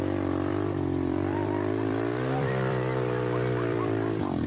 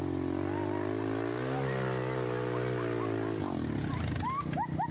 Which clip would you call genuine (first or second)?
second